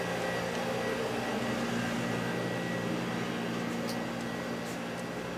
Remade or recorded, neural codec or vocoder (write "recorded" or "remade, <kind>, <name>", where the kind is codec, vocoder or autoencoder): recorded